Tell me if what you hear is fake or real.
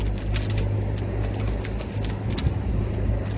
real